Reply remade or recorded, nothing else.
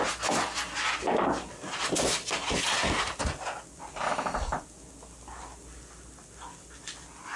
recorded